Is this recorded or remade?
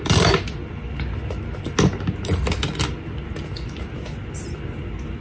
recorded